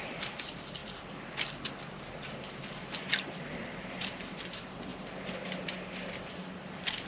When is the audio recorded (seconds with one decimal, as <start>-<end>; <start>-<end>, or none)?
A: 0.8-2.1; 4.9-6.3